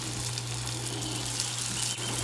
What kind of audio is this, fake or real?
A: real